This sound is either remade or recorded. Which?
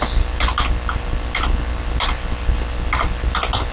recorded